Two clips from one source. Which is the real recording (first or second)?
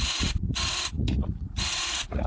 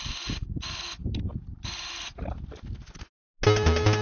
second